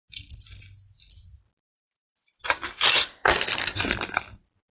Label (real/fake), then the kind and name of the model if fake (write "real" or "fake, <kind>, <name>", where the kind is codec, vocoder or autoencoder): real